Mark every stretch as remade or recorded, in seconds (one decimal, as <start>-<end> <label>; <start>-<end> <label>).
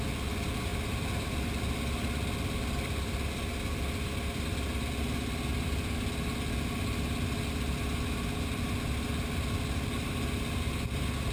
0.0-0.7 recorded; 0.7-1.6 remade; 1.6-11.3 recorded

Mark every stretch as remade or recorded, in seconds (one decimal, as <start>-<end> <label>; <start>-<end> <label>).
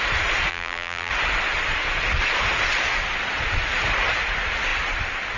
0.0-0.5 recorded; 0.5-1.1 remade; 1.1-5.4 recorded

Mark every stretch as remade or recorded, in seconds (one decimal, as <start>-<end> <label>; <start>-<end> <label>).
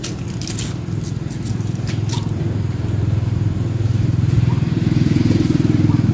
0.0-1.5 recorded; 1.5-5.2 remade; 5.2-6.1 recorded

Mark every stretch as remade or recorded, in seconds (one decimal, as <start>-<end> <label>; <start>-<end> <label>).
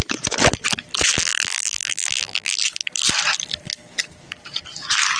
0.0-1.3 recorded; 1.3-2.6 remade; 2.6-5.2 recorded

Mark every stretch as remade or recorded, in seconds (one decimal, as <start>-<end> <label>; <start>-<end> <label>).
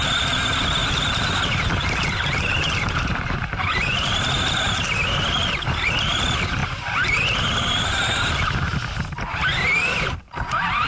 0.0-0.8 recorded; 0.8-4.1 remade; 4.1-10.9 recorded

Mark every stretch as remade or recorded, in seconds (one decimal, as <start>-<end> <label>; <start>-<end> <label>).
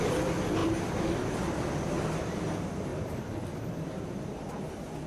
0.0-2.9 recorded; 2.9-3.6 remade; 3.6-5.1 recorded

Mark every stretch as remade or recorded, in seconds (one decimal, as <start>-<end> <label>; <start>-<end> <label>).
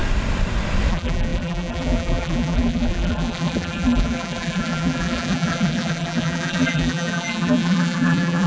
0.0-0.9 recorded; 0.9-8.5 remade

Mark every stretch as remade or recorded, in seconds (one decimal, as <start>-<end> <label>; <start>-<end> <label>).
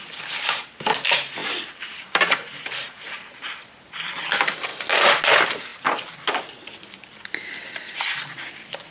0.0-1.4 recorded; 1.4-3.7 remade; 3.7-8.9 recorded